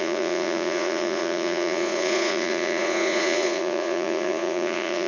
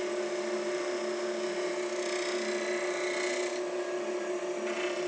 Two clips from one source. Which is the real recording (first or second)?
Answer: second